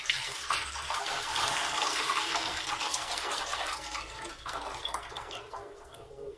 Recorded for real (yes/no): no